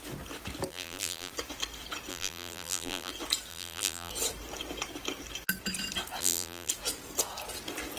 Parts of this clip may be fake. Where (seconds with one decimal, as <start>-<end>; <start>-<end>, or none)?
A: 0.7-1.3; 2.1-3.1; 3.5-4.1; 6.2-6.7